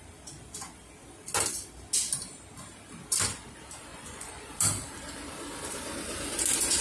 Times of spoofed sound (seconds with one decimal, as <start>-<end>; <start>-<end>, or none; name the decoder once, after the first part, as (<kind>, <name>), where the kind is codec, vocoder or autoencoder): 3.9-4.5 (vocoder, Vocos)